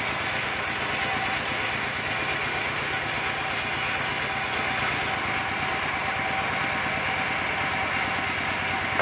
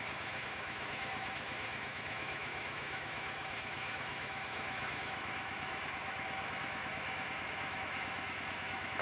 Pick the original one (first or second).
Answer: first